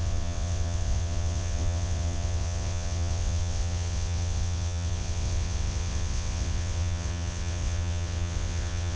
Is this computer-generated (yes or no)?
yes